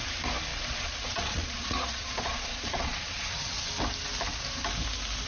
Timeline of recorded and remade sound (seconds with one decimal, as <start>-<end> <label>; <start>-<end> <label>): 0.0-0.5 recorded; 0.5-3.7 remade; 3.7-5.3 recorded

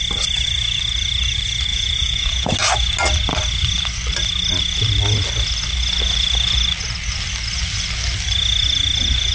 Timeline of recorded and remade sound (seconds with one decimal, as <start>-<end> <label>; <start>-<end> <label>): 0.0-1.7 recorded; 1.7-2.5 remade; 2.5-9.3 recorded